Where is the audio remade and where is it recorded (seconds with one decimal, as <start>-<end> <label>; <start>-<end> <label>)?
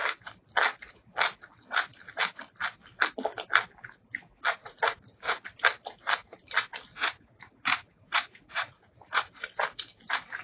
0.0-4.6 recorded; 4.6-5.4 remade; 5.4-6.9 recorded; 6.9-9.3 remade; 9.3-10.4 recorded